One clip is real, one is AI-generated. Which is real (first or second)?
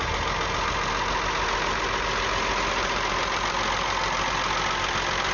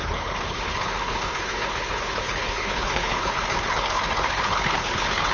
first